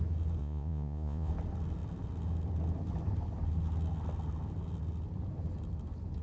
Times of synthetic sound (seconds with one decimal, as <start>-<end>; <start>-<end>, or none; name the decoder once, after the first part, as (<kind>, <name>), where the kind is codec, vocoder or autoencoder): 0.4-1.3 (vocoder, Vocos)